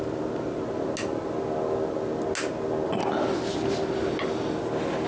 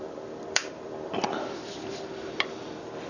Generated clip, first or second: second